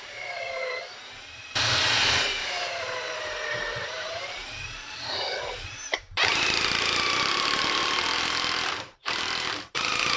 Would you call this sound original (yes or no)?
no